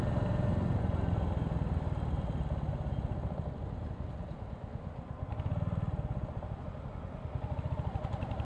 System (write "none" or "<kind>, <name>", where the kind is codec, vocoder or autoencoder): none